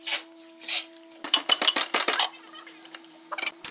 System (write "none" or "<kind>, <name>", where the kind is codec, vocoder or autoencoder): vocoder, BigVGAN v2